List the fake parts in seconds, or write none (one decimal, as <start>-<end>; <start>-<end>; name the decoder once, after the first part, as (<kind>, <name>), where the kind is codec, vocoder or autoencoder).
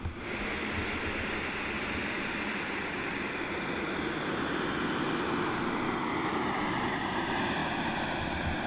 none